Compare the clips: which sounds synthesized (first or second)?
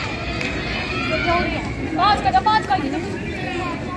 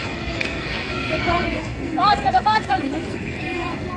second